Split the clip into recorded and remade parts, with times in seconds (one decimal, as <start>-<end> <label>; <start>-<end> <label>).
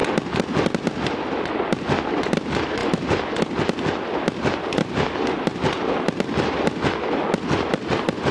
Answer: 0.0-8.3 recorded